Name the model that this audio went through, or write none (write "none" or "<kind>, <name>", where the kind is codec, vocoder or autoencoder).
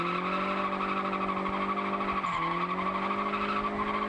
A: none